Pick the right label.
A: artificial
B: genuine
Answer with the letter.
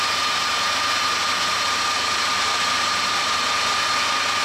B